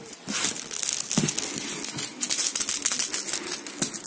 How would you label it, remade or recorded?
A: recorded